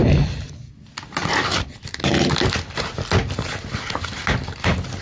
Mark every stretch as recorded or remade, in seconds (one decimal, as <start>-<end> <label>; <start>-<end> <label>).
0.0-5.0 recorded